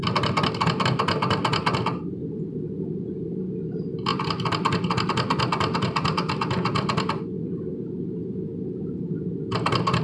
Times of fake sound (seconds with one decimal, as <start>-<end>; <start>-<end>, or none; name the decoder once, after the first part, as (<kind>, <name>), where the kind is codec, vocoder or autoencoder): none